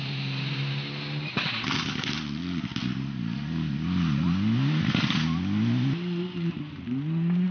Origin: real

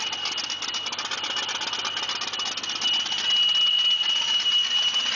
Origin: real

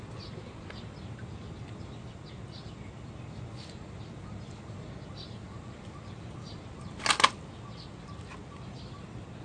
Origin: real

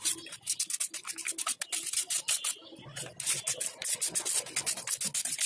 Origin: real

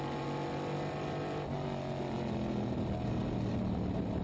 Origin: real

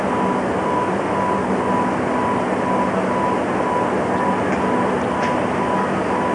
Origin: real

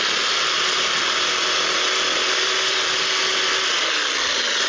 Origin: real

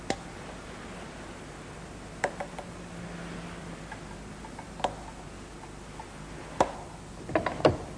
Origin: real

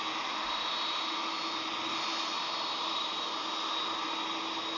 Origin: real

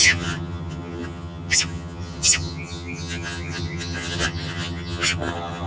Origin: fake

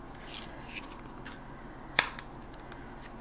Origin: real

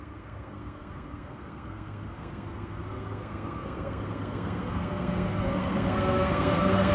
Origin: fake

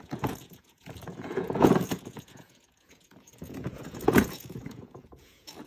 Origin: fake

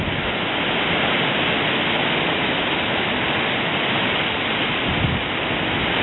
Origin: real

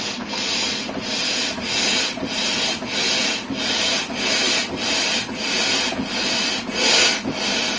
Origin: real